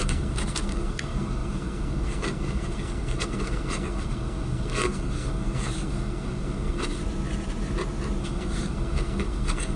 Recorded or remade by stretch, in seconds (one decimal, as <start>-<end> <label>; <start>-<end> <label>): 0.0-7.0 remade; 7.0-8.2 recorded; 8.2-9.8 remade